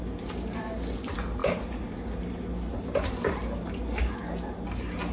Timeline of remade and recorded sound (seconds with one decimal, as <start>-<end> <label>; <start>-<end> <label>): 0.0-5.1 recorded